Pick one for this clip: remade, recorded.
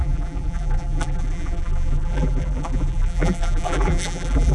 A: remade